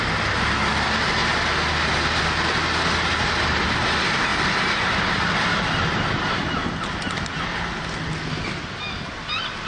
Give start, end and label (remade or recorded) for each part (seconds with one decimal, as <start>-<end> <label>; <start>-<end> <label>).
0.0-9.7 recorded

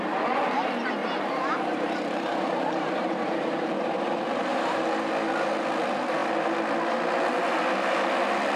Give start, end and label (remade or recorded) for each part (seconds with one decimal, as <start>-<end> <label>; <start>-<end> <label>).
0.0-1.0 recorded; 1.0-4.0 remade; 4.0-4.5 recorded; 4.5-5.1 remade; 5.1-8.6 recorded